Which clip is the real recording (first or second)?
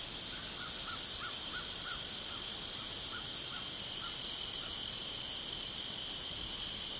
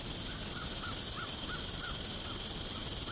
first